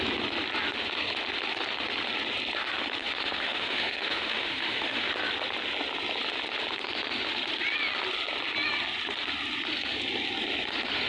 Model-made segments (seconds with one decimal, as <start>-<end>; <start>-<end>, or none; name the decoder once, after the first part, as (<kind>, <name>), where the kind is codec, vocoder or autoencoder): 3.0-5.1 (autoencoder, DAC-VAE)